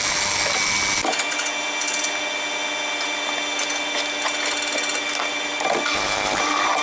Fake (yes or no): no